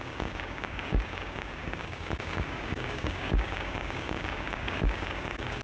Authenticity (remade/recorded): remade